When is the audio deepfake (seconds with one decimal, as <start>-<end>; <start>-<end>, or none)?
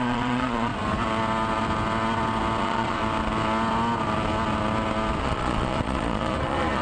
0.0-0.7; 2.6-3.0; 5.2-6.8